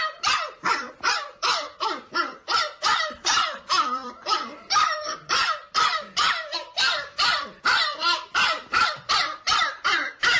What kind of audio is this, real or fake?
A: fake